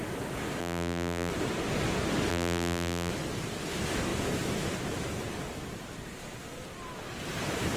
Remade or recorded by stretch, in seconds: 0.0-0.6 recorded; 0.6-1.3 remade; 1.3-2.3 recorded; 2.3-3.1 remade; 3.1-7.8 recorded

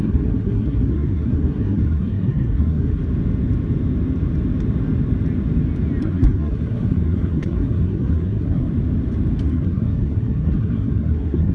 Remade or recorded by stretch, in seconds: 0.0-3.0 remade; 3.0-6.0 recorded; 6.0-8.7 remade; 8.7-9.5 recorded; 9.5-11.5 remade

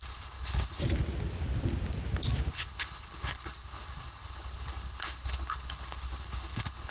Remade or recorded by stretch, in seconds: 0.0-0.8 remade; 0.8-2.5 recorded; 2.5-6.9 remade

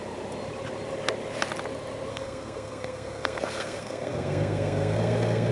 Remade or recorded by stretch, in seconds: 0.0-2.1 recorded; 2.1-5.5 remade